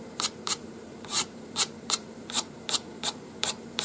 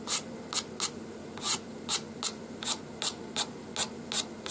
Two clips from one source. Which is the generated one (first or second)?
first